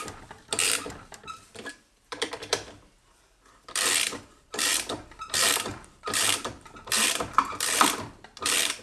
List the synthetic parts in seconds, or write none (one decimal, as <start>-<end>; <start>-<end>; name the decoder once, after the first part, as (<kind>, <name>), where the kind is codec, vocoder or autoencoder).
0.0-8.8 (vocoder, BigVGAN v2)